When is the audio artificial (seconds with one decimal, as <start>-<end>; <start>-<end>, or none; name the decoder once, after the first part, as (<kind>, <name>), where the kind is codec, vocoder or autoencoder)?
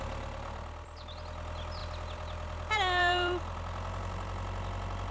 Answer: 1.8-5.1 (vocoder, BigVGAN v2)